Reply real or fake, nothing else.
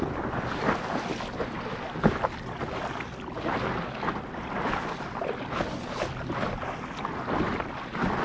real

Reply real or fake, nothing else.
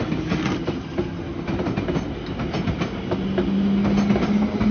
real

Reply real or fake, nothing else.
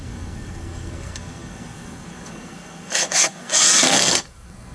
fake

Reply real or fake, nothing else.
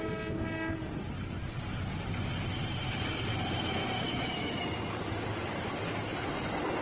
real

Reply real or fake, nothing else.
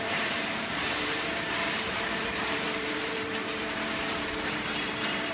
fake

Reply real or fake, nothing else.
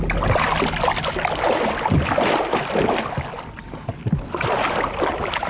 real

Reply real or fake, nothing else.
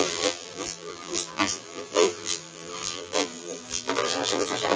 fake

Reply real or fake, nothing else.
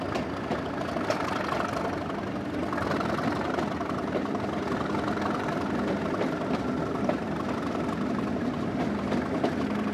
fake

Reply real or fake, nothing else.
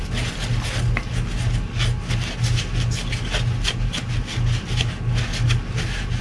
real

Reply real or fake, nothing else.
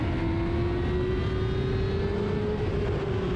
real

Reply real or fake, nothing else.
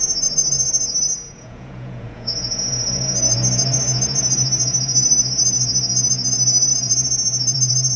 fake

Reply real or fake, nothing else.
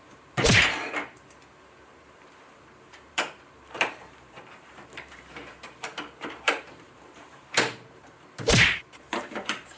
fake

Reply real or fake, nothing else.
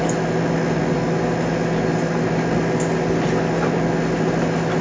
real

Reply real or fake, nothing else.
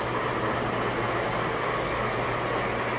real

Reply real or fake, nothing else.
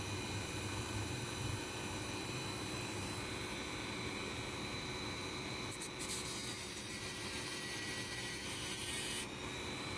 fake